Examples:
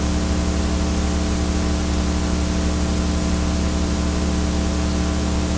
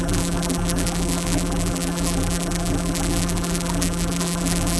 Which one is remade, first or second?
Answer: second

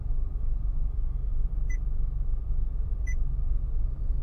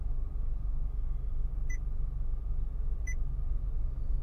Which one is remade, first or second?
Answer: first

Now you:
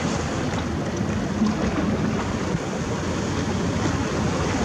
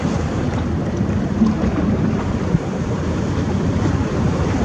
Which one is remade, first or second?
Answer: second